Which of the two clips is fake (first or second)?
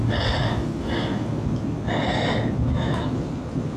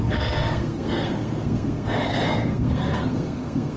second